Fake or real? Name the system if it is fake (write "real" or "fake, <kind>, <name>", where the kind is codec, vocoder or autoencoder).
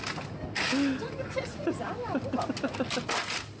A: real